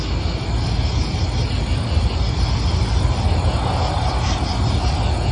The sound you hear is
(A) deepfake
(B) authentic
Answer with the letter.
B